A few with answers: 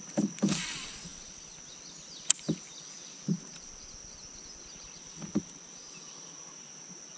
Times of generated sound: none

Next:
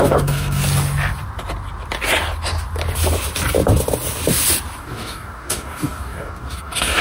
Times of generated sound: 0.0-0.6 (codec, DAC); 4.8-7.0

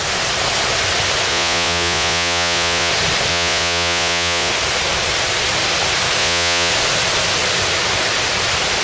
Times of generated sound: 1.3-2.9 (vocoder, Vocos); 3.3-4.5; 6.2-6.7

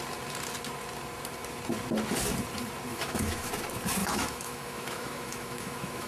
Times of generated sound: 2.9-3.5 (autoencoder, DAC-VAE); 4.0-6.1

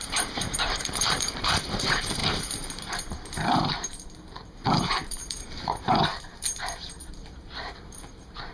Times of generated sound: 0.0-8.5 (vocoder, BigVGAN v2)